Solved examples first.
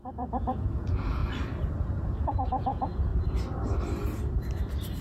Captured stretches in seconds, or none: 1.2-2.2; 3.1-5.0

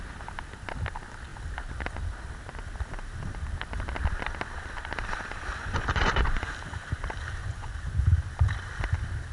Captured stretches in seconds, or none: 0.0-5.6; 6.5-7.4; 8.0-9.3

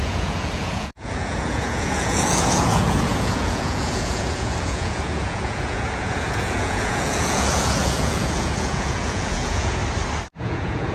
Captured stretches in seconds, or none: 9.8-10.4

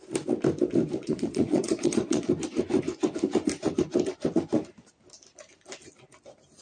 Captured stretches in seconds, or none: 0.0-1.0; 2.3-6.6

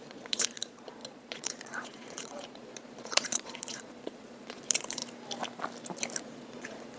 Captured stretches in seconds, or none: 5.0-6.2

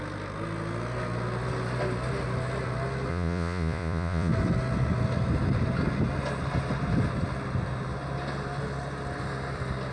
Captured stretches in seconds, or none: 0.0-3.1; 4.3-9.9

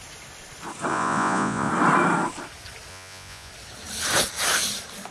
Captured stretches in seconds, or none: 0.0-0.9; 1.7-2.9; 3.5-5.1

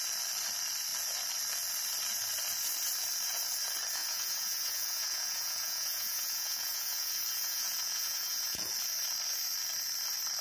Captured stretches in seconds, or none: 0.0-4.0; 8.7-10.4